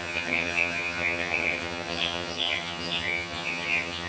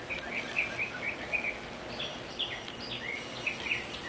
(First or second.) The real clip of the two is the second